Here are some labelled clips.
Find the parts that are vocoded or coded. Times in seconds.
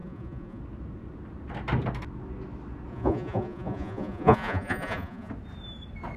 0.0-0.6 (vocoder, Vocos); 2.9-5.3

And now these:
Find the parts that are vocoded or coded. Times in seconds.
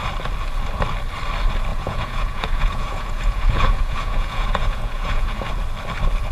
1.7-5.5 (vocoder, Vocos)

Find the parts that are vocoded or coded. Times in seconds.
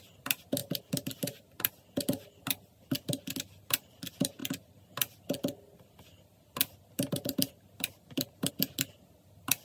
none